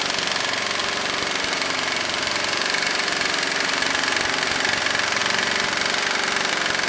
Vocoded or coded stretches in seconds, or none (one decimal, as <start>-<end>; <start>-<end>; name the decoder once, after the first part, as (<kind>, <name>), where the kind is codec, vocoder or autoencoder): 0.8-3.9 (vocoder, BigVGAN v2)